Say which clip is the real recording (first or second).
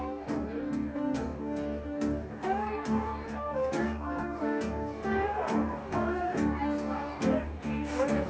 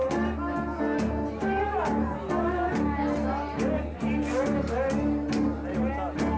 second